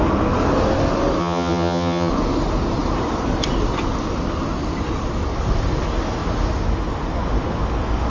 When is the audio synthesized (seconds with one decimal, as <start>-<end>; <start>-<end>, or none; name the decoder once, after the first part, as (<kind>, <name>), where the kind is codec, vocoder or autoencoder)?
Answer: 1.2-2.1 (vocoder, HiFi-GAN)